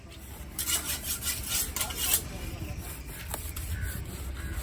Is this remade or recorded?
recorded